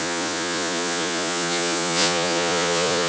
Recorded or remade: remade